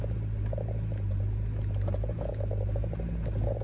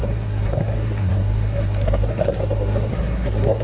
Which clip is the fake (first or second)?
second